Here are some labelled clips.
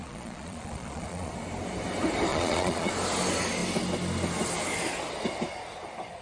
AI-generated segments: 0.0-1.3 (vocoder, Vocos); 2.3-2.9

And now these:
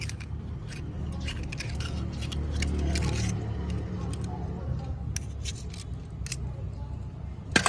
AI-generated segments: none

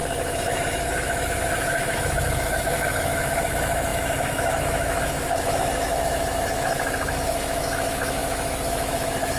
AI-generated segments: 0.0-9.4 (autoencoder, DAC-VAE)

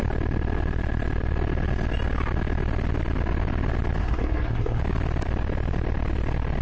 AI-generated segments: 4.0-4.8 (codec, SNAC)

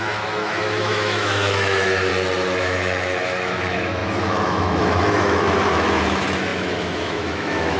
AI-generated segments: 0.0-2.1 (autoencoder, DAC-VAE); 2.6-7.8

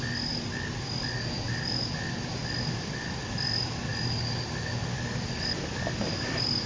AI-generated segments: none

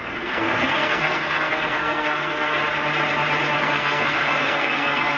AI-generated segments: 0.0-2.6 (codec, SNAC); 3.6-5.2